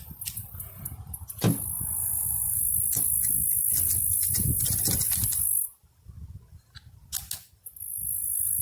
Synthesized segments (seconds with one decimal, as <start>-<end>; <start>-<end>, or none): 2.0-2.6